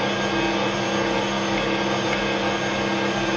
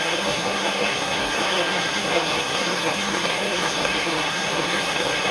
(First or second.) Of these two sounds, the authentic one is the first